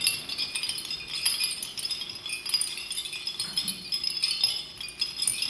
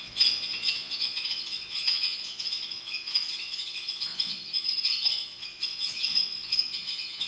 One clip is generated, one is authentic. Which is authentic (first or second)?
first